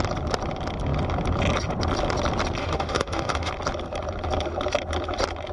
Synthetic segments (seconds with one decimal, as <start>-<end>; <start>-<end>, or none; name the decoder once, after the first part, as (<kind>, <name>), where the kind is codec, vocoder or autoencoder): 2.6-3.5 (autoencoder, DAC-VAE)